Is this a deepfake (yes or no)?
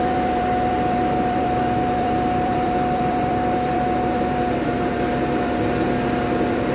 yes